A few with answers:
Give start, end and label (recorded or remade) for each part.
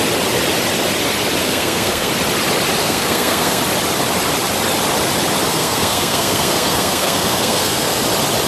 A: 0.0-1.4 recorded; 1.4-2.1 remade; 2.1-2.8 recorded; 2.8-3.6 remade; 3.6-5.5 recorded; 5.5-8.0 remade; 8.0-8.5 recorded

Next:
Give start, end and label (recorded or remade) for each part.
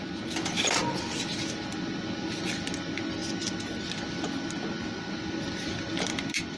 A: 0.0-6.6 recorded